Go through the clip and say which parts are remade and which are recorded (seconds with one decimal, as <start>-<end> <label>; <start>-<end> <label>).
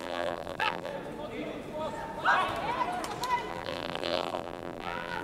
0.0-0.9 remade; 0.9-3.5 recorded; 3.5-5.2 remade